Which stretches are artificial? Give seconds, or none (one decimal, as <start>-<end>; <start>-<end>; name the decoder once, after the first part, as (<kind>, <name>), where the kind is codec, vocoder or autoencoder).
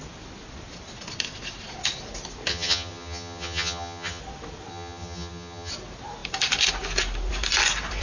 2.5-4.2 (vocoder, HiFi-GAN); 4.7-5.7